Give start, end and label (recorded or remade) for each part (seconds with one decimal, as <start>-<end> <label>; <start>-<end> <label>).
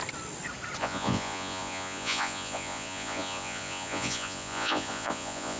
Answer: 0.0-0.8 recorded; 0.8-5.6 remade